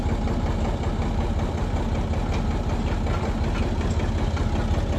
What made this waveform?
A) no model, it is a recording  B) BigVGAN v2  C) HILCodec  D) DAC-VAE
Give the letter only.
A